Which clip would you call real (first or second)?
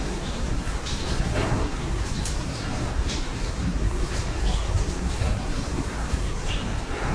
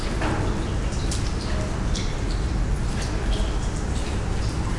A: second